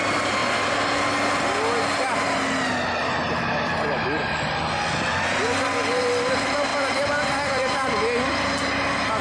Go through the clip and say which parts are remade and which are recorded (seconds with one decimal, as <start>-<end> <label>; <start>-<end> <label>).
0.0-9.2 recorded